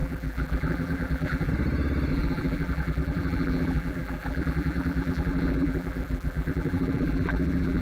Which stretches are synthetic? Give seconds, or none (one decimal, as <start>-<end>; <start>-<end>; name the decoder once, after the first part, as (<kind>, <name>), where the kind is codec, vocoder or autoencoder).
0.0-1.5 (vocoder, BigVGAN v2); 2.1-7.8

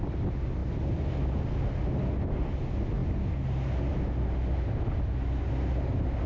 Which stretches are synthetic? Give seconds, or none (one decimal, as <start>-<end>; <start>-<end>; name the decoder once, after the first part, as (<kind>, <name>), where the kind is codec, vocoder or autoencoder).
none

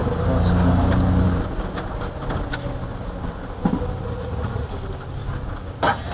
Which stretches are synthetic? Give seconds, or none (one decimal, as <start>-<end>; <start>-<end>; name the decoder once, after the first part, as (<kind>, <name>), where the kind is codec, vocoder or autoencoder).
4.0-4.7 (vocoder, Vocos)

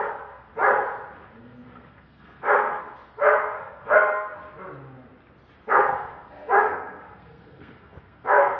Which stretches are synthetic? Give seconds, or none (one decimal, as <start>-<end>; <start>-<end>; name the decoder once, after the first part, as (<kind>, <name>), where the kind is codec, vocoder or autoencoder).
0.0-0.5 (codec, SNAC); 1.4-4.4; 5.7-8.6

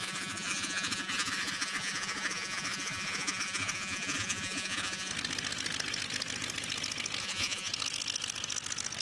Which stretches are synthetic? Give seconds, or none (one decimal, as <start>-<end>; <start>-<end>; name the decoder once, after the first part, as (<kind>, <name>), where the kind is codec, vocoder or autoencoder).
0.0-5.1 (vocoder, Vocos); 7.2-7.7